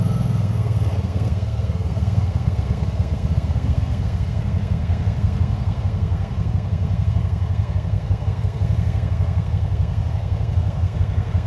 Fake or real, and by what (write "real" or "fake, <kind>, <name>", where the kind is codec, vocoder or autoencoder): fake, codec, SNAC